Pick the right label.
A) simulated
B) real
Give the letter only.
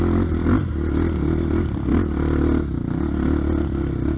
B